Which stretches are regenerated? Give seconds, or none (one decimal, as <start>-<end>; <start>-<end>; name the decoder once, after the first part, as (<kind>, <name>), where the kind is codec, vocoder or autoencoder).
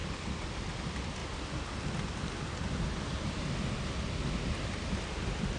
none